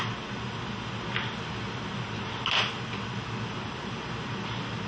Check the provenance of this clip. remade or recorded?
recorded